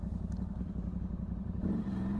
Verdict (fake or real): real